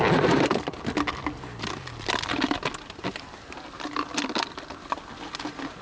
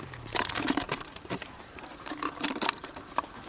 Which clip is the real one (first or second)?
first